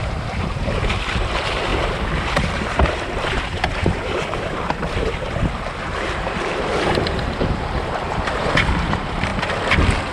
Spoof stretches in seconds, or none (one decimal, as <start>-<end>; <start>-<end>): 0.0-9.3